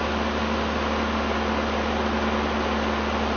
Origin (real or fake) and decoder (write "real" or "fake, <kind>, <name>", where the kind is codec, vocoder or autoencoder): real